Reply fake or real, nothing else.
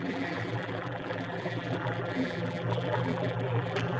fake